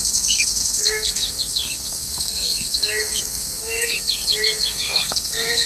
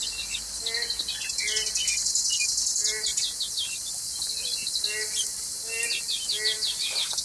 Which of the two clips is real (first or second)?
second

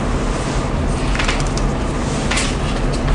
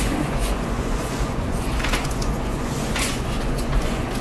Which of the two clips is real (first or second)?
first